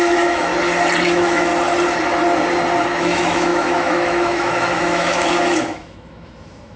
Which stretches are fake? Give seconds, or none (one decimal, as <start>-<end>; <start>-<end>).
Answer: 0.0-0.5; 1.1-1.5; 3.0-6.8